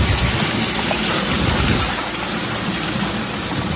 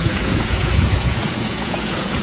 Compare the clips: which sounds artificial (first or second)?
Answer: second